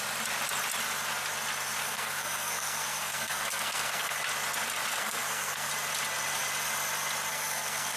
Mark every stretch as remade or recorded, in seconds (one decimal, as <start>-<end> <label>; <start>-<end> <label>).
0.0-1.8 recorded; 1.8-4.2 remade; 4.2-4.9 recorded; 4.9-5.7 remade; 5.7-7.3 recorded; 7.3-8.0 remade